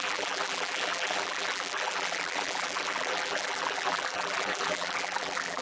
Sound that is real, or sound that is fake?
fake